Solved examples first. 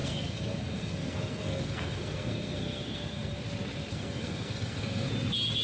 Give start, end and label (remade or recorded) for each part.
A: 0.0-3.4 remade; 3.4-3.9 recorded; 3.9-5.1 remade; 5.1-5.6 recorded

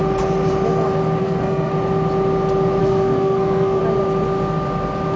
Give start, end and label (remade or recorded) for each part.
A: 0.0-1.2 recorded; 1.2-1.7 remade; 1.7-2.8 recorded; 2.8-3.8 remade; 3.8-5.2 recorded

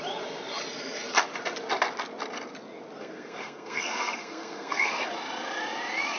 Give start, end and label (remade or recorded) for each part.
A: 0.0-3.0 recorded; 3.0-5.1 remade; 5.1-6.2 recorded

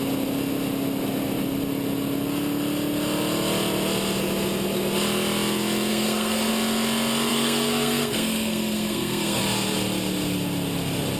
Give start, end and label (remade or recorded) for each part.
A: 0.0-5.9 recorded; 5.9-6.5 remade; 6.5-7.3 recorded; 7.3-9.4 remade; 9.4-11.2 recorded

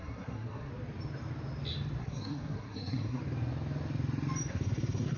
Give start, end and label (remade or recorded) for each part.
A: 0.0-0.7 remade; 0.7-2.0 recorded; 2.0-3.2 remade; 3.2-4.5 recorded; 4.5-5.2 remade